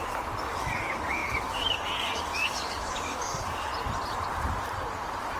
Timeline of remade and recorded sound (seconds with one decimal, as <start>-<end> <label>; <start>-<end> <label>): 0.0-0.5 recorded; 0.5-3.7 remade; 3.7-5.4 recorded

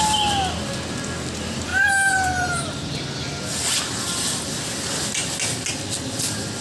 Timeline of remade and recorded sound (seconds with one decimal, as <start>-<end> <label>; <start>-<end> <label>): 0.0-1.7 recorded; 1.7-3.0 remade; 3.0-6.6 recorded